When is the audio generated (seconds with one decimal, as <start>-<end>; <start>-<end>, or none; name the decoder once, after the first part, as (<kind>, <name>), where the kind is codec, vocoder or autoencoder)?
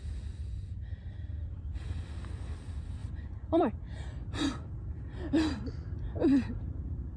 3.0-3.6 (vocoder, Vocos)